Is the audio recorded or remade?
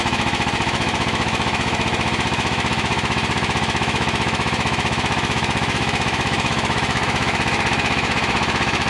remade